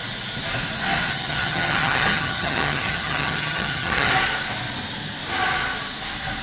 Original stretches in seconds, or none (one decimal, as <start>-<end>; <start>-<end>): 0.0-1.1; 4.1-6.4